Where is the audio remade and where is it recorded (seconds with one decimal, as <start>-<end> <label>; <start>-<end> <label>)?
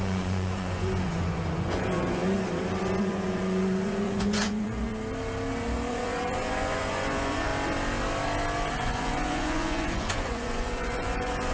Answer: 0.0-2.2 remade; 2.2-3.0 recorded; 3.0-4.9 remade; 4.9-5.9 recorded; 5.9-7.5 remade; 7.5-8.7 recorded; 8.7-11.5 remade